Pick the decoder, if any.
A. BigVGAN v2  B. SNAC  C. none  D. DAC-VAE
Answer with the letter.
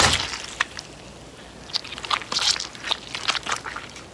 C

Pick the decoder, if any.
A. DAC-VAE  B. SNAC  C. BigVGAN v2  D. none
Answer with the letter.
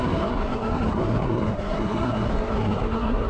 B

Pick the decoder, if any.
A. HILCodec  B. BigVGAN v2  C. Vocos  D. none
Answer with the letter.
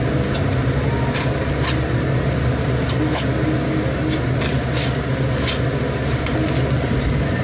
D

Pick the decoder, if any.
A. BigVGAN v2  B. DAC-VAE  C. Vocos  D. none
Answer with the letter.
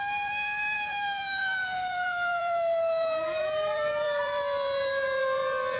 A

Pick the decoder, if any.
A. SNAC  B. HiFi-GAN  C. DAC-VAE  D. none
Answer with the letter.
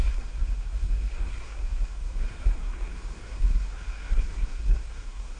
A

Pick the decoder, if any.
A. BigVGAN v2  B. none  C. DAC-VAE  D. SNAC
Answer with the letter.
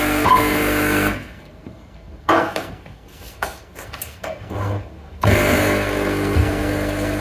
D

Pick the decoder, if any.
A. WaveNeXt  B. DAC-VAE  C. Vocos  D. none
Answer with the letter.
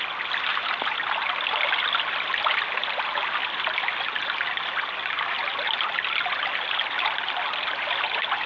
D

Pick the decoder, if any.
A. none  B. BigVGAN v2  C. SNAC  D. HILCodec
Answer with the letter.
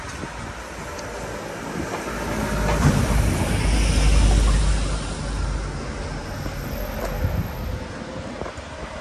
A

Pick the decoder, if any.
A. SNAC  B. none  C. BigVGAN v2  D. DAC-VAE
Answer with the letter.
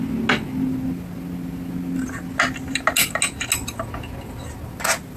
B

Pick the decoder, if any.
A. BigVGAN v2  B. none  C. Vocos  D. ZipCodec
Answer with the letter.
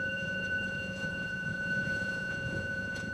C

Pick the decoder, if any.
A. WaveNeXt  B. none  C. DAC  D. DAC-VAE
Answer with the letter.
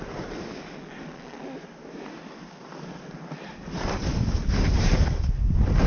B